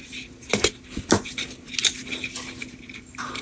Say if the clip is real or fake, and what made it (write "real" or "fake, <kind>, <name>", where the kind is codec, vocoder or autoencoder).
real